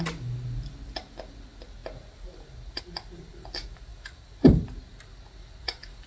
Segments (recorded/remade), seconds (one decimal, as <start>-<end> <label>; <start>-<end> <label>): 0.0-6.1 recorded